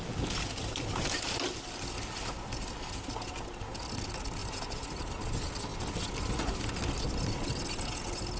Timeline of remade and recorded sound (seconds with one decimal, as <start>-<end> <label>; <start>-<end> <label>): 0.0-4.4 recorded; 4.4-5.1 remade; 5.1-8.4 recorded